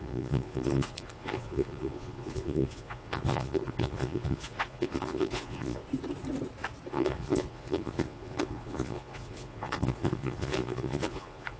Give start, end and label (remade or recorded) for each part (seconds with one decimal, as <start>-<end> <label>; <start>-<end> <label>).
0.0-5.8 remade; 5.8-6.9 recorded; 6.9-11.6 remade